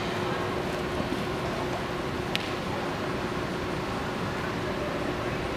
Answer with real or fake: real